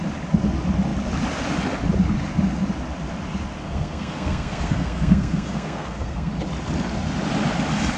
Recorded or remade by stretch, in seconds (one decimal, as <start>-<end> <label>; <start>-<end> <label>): 0.0-3.6 recorded; 3.6-6.3 remade; 6.3-8.0 recorded